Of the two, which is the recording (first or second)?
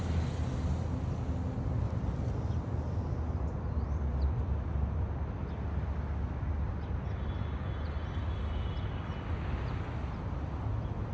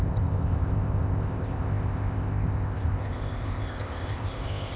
first